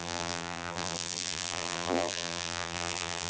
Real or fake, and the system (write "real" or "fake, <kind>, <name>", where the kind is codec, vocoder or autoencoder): fake, vocoder, BigVGAN v2